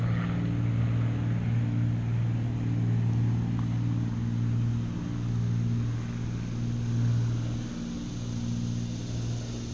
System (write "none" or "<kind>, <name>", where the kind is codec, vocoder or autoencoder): none